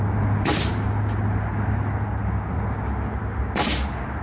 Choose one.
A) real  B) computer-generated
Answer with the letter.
A